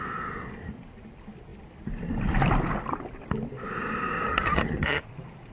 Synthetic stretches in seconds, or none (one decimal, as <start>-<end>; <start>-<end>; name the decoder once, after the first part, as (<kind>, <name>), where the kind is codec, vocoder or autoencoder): 4.3-5.0 (vocoder, HiFi-GAN)